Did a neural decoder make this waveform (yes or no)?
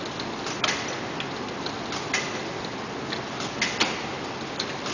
no